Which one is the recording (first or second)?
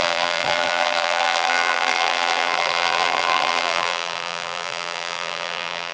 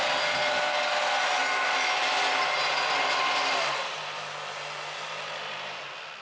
second